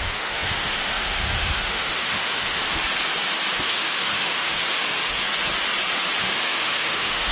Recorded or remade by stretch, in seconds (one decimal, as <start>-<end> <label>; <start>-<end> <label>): 0.0-2.8 remade; 2.8-3.6 recorded; 3.6-5.2 remade; 5.2-6.2 recorded; 6.2-7.3 remade